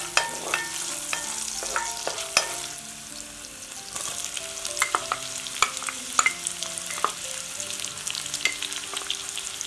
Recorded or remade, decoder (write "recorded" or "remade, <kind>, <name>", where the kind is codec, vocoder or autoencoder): recorded